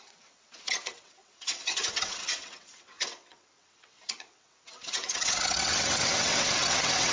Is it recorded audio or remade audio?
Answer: remade